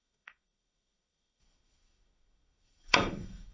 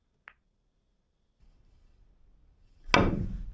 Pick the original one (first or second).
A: second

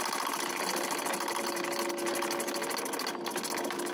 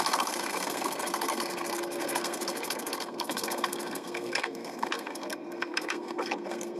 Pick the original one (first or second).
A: first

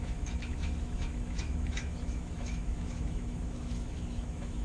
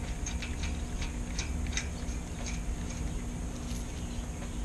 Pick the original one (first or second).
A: second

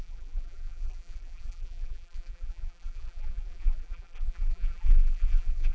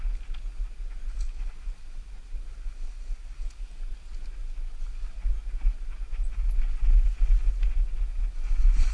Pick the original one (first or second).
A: second